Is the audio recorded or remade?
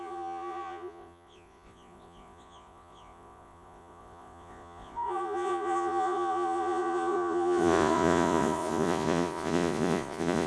remade